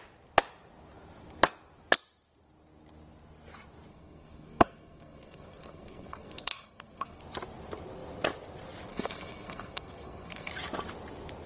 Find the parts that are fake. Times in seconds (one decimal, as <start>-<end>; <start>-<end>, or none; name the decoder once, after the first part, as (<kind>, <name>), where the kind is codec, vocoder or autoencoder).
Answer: 3.9-7.2 (codec, SNAC); 8.9-10.5